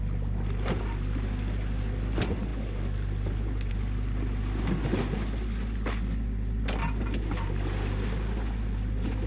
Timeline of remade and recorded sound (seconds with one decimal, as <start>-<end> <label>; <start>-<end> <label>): 0.0-9.3 recorded